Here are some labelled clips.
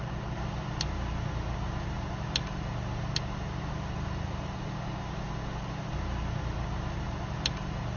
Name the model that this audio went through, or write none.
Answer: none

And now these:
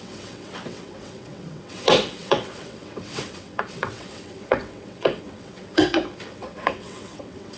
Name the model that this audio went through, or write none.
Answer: vocoder, WaveNeXt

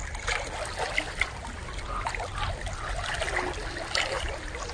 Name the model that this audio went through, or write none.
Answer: none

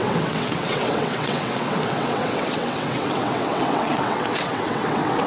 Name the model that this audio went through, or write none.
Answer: vocoder, WaveNeXt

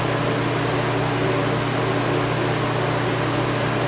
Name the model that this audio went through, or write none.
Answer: none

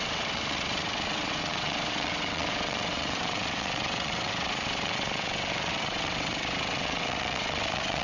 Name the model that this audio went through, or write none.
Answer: vocoder, WaveNeXt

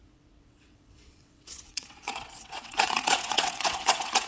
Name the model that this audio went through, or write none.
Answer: vocoder, WaveNeXt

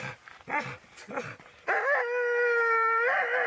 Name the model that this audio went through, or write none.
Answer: none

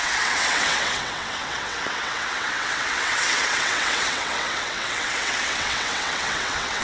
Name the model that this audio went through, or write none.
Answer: vocoder, WaveNeXt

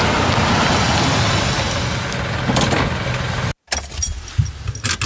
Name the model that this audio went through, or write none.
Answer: none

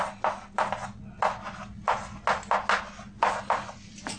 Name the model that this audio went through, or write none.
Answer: none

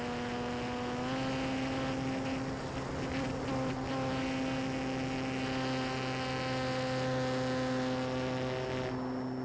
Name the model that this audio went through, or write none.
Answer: none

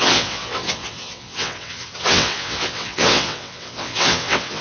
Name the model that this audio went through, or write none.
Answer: vocoder, WaveNeXt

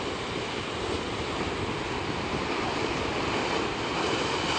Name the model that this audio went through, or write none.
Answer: none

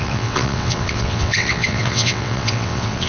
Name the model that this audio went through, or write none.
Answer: vocoder, WaveNeXt